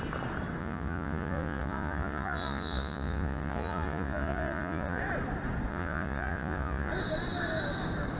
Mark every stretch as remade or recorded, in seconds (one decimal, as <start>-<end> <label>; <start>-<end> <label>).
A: 0.0-0.6 recorded; 0.6-5.0 remade; 5.0-5.7 recorded; 5.7-6.9 remade; 6.9-8.2 recorded